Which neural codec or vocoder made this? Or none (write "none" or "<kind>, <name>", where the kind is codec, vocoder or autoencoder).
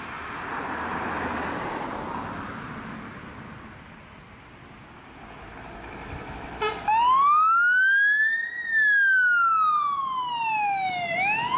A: none